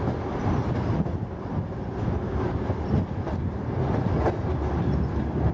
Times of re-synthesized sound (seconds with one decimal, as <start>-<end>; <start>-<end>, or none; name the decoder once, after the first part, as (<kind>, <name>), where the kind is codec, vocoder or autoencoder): none